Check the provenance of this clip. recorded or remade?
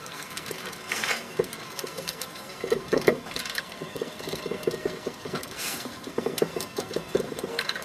remade